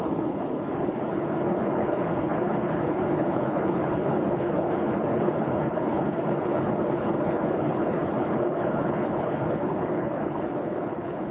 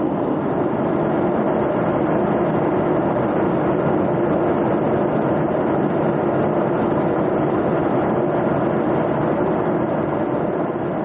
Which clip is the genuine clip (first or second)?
second